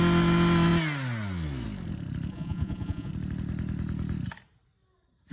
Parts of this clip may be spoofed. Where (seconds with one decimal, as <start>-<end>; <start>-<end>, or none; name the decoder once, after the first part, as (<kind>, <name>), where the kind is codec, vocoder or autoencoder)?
2.3-3.1 (vocoder, Vocos)